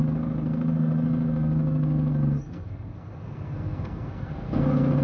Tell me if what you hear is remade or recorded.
remade